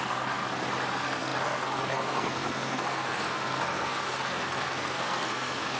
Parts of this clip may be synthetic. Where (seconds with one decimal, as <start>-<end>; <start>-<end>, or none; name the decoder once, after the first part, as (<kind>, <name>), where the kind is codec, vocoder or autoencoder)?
0.0-0.4 (codec, SNAC); 0.9-5.8